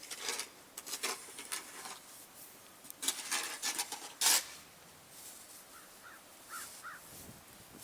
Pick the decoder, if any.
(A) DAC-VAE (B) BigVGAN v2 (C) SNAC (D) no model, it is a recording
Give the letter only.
D